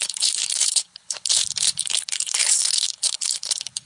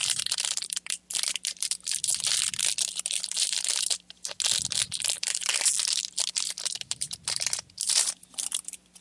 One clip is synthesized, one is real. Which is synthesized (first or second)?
first